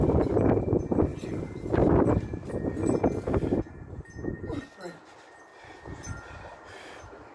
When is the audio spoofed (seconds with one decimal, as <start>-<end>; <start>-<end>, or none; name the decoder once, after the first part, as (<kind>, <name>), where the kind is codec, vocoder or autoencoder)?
5.5-6.3 (vocoder, BigVGAN v2)